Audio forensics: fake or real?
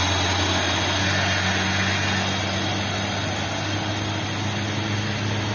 real